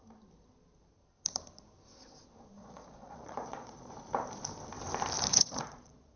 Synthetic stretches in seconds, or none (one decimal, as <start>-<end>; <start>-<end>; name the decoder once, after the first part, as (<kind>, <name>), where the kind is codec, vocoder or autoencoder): 2.6-3.9 (vocoder, Vocos); 5.3-6.2